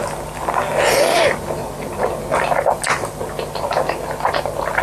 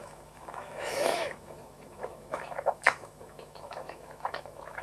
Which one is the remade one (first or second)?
second